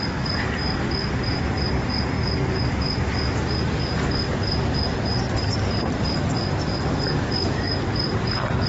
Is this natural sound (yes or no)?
yes